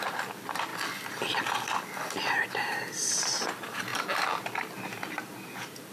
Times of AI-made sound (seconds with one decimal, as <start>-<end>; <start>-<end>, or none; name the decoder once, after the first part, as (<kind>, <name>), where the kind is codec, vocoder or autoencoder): none